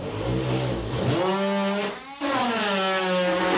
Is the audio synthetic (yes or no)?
no